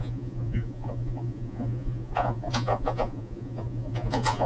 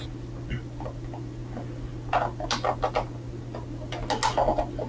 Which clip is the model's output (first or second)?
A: first